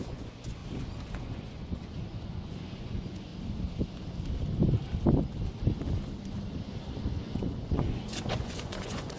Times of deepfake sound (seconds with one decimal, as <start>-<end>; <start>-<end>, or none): 0.0-0.6; 1.2-3.3; 7.2-9.2